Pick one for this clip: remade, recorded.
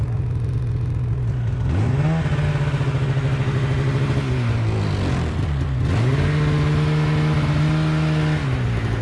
recorded